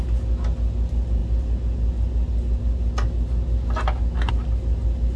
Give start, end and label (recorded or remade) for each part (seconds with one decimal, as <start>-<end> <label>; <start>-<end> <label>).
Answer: 0.0-5.2 recorded